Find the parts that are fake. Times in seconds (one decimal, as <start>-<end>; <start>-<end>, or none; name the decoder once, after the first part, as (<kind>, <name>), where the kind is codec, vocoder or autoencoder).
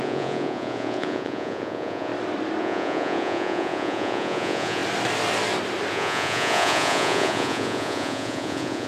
0.0-2.1 (vocoder, Vocos); 2.6-4.8; 5.9-8.9